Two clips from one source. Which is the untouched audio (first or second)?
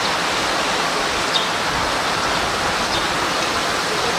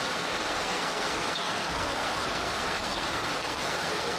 first